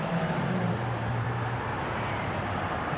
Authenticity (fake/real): fake